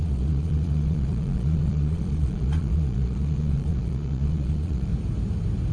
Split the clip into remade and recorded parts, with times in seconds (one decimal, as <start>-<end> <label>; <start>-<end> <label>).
0.0-4.9 remade; 4.9-5.7 recorded